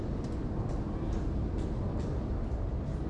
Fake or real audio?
real